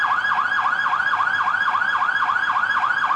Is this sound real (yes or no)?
yes